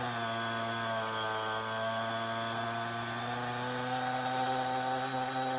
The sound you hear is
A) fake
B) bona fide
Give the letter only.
B